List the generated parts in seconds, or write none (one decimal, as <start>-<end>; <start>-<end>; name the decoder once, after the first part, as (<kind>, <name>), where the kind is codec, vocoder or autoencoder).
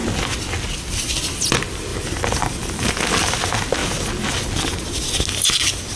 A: none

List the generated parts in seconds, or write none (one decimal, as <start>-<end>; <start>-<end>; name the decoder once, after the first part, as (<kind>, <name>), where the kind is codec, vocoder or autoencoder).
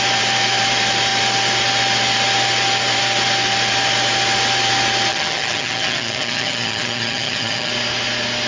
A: 5.1-7.7 (vocoder, HiFi-GAN)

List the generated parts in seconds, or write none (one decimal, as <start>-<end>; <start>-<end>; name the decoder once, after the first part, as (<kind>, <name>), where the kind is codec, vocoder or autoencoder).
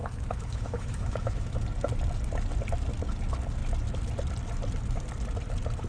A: 0.0-1.6 (autoencoder, DAC-VAE)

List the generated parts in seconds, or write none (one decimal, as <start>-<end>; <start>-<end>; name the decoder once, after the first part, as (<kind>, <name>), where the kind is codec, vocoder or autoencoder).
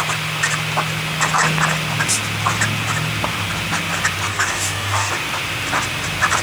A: 4.3-5.1 (codec, DAC)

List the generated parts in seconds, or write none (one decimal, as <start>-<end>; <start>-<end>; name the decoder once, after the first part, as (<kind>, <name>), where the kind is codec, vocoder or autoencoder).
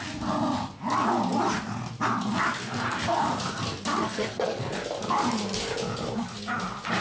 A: 4.0-4.6 (codec, SNAC)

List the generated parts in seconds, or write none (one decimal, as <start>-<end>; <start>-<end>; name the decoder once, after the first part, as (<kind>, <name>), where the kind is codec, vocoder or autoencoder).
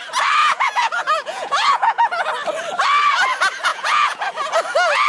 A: 0.4-2.3 (vocoder, Vocos); 3.7-4.2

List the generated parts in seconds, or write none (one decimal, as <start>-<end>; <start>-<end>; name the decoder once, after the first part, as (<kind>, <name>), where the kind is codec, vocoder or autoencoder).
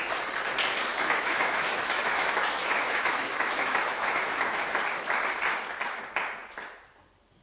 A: 0.9-4.7 (autoencoder, DAC-VAE)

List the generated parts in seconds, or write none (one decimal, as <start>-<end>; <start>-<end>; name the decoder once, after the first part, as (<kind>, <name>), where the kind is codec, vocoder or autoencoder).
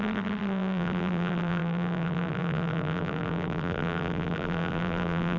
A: 0.0-5.4 (vocoder, BigVGAN v2)